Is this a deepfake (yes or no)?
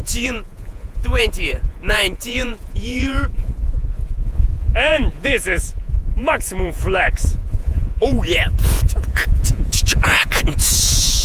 yes